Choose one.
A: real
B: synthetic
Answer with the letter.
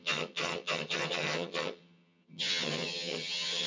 B